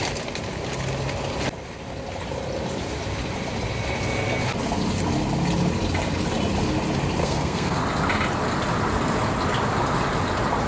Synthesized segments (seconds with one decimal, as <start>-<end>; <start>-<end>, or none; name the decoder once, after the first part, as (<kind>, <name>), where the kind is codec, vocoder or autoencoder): 7.2-7.8 (codec, SNAC)